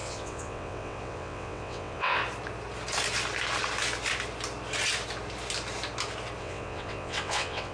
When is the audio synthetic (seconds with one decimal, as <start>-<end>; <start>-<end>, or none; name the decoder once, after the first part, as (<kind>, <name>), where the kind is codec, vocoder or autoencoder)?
0.0-2.2 (vocoder, WaveNeXt); 6.4-7.7